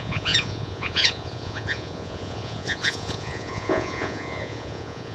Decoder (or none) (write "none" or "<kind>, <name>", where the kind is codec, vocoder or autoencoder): vocoder, Vocos